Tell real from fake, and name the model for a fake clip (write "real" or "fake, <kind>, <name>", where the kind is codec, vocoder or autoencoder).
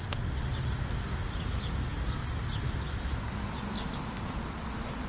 real